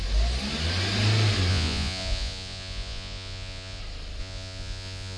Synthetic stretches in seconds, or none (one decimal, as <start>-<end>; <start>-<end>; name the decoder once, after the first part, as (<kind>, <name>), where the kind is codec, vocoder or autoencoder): 1.5-3.8 (vocoder, Vocos); 4.2-5.2